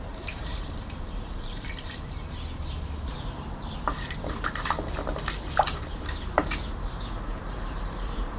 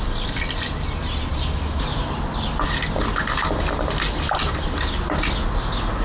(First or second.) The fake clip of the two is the first